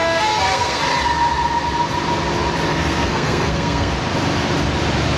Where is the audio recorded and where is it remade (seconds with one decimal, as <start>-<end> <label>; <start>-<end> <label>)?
0.0-0.8 remade; 0.8-2.7 recorded; 2.7-3.9 remade; 3.9-5.2 recorded